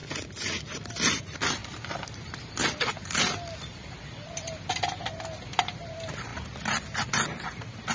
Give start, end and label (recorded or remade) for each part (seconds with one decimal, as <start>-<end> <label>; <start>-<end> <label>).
0.0-1.6 recorded; 1.6-2.5 remade; 2.5-7.9 recorded

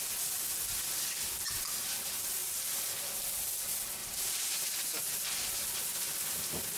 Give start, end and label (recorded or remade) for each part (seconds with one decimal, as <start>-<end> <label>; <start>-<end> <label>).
0.0-4.0 recorded; 4.0-4.7 remade; 4.7-6.8 recorded